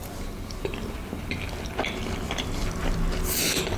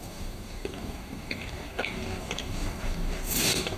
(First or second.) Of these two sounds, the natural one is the first